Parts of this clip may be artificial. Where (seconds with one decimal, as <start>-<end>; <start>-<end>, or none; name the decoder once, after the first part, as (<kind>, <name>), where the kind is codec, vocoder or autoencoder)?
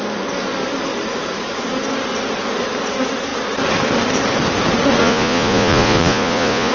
5.0-6.7 (vocoder, Vocos)